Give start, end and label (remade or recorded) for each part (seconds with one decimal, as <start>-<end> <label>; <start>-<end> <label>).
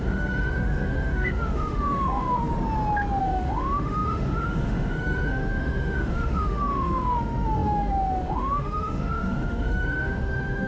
0.0-2.5 remade; 2.5-3.2 recorded; 3.2-10.7 remade